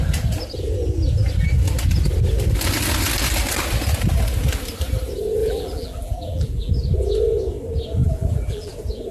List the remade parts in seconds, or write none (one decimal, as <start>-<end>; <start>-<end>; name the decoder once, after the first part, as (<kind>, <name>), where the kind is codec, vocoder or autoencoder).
5.4-6.7 (vocoder, BigVGAN v2); 8.0-8.7